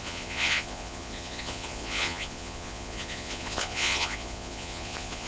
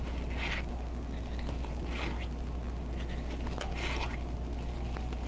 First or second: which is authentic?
second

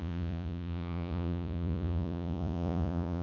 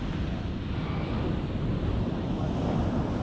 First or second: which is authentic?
second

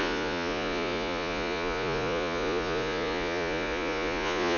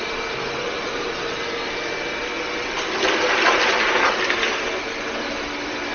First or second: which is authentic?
second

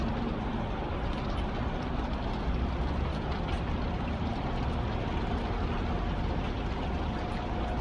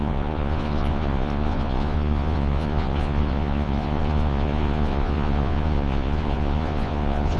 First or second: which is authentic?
first